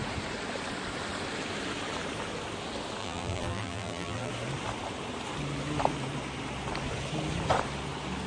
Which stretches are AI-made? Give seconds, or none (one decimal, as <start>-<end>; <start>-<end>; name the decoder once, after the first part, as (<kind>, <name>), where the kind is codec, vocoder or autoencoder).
3.0-4.3 (vocoder, BigVGAN v2)